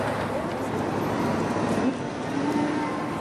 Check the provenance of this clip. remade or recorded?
remade